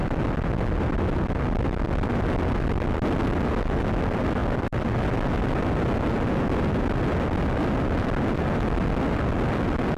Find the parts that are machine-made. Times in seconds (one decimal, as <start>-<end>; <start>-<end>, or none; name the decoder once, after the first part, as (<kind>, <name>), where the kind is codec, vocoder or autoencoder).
none